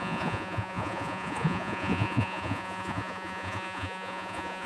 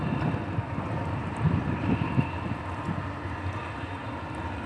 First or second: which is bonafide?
second